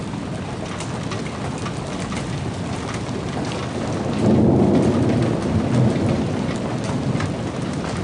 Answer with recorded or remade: recorded